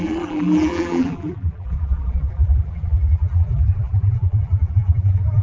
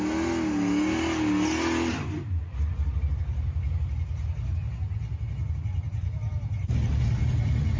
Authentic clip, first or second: second